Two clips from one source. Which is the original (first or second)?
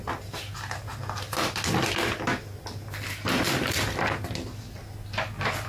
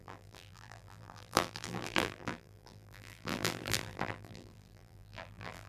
first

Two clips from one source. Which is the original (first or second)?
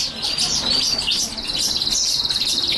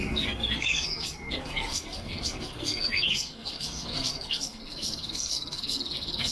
first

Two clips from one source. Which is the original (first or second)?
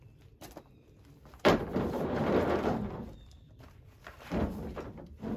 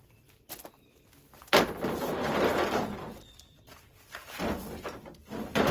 second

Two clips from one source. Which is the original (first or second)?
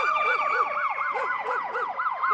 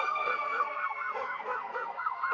first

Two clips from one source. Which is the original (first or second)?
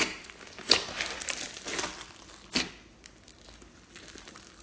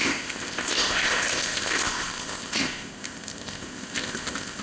first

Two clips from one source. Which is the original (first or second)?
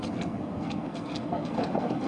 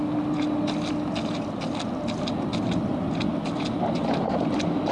second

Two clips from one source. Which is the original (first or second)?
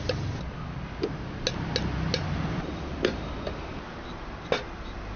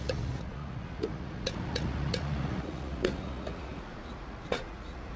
first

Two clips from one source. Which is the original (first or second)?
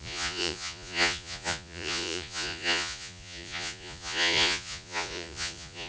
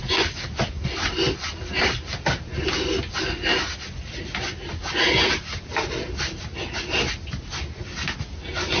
second